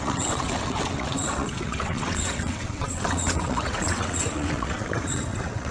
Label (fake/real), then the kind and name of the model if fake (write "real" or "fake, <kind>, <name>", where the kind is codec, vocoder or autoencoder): fake, vocoder, WaveNeXt